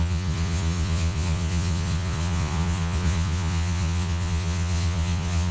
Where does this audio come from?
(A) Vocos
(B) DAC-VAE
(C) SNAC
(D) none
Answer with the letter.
A